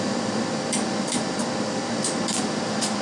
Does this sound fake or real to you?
fake